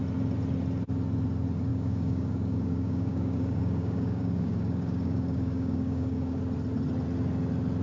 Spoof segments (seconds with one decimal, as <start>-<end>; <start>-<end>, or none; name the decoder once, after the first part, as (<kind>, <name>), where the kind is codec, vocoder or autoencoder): 1.7-6.4 (codec, DAC)